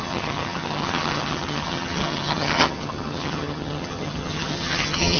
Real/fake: fake